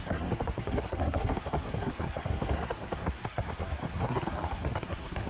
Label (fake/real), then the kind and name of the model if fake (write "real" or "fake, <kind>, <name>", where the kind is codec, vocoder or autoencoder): fake, codec, SNAC